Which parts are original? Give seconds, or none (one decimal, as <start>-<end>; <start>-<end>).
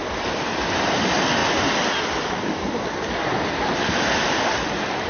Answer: 0.0-5.1